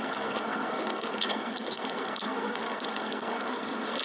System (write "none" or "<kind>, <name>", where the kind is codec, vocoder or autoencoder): codec, SNAC